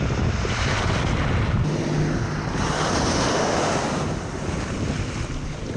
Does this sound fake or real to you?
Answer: real